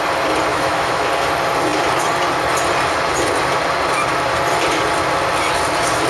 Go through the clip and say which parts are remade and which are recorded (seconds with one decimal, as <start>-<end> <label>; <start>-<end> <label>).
0.0-0.5 recorded; 0.5-1.1 remade; 1.1-6.1 recorded